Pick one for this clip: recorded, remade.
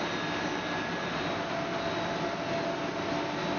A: recorded